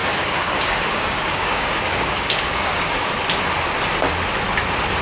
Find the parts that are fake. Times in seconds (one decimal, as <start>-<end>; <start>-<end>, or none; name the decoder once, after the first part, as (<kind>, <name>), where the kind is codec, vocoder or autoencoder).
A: 0.0-3.0 (codec, DAC)